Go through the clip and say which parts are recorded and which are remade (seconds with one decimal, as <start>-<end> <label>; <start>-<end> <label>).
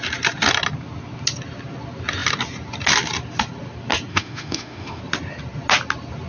0.0-4.1 recorded; 4.1-5.0 remade; 5.0-6.3 recorded